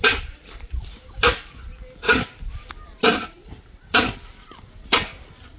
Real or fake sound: fake